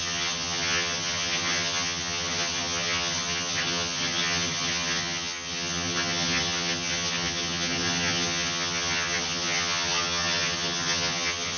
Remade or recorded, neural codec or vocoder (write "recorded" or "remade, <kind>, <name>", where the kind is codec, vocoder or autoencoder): remade, vocoder, HiFi-GAN